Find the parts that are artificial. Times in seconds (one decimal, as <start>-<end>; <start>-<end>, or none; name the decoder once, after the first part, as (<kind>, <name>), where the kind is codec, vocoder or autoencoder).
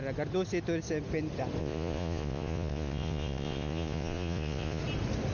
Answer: 1.6-4.8 (vocoder, Vocos)